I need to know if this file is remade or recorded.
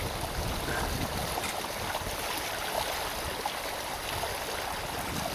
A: recorded